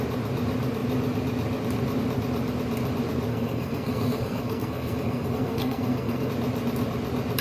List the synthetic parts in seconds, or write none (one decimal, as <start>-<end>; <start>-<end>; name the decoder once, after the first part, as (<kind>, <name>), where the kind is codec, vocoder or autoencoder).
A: 3.3-6.3 (codec, SNAC)